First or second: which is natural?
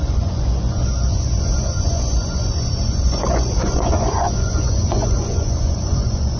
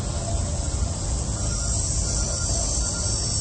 second